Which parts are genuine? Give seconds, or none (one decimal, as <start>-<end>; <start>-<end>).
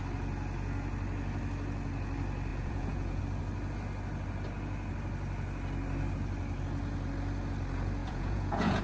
0.0-2.5; 3.2-8.0